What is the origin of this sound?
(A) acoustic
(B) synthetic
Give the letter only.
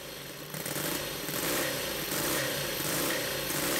B